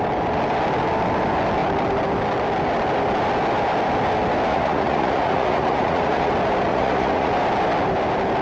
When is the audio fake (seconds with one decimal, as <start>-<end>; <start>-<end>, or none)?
4.5-6.3; 6.7-7.3